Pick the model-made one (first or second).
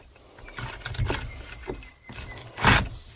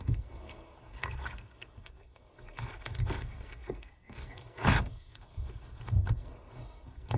second